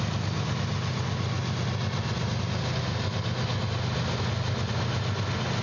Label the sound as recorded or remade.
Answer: recorded